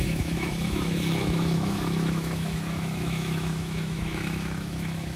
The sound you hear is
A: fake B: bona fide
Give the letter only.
A